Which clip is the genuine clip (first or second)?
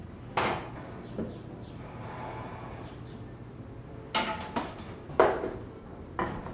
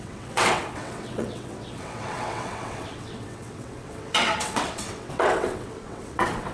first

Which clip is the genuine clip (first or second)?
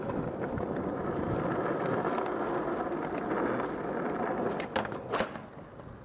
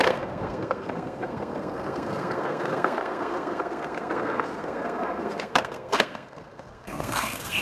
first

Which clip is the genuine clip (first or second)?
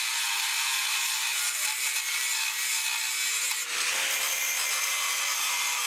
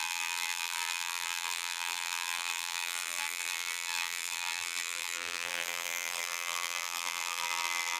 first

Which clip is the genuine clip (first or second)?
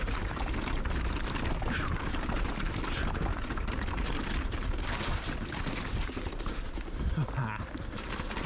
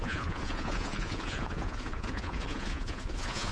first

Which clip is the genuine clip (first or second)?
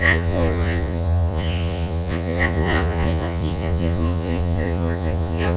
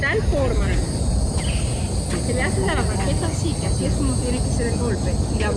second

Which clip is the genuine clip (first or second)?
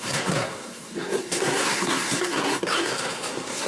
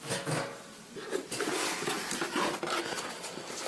second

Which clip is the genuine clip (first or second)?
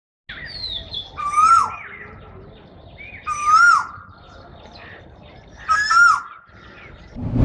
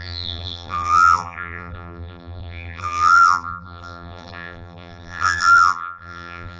first